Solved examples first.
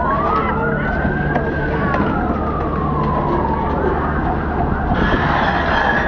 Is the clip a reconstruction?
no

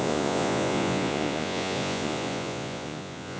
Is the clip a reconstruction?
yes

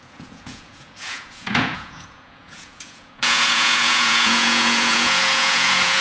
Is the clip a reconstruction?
yes